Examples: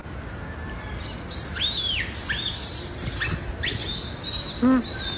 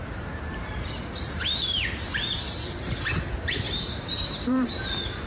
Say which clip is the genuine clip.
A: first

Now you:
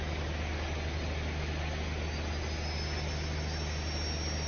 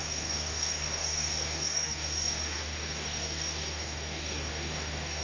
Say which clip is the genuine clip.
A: first